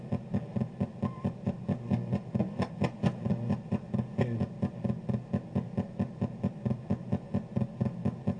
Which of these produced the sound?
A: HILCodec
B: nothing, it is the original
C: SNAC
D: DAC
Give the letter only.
B